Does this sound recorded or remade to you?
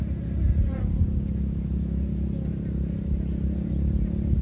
recorded